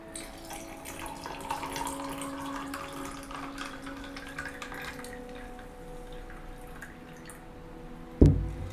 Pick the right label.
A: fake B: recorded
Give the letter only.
B